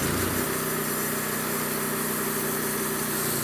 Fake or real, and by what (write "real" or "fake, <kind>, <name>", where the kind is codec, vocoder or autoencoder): real